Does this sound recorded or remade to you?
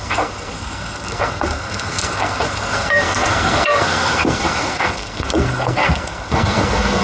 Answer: remade